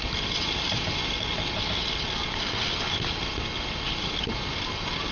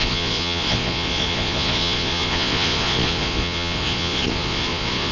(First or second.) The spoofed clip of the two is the second